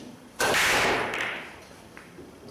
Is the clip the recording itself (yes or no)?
no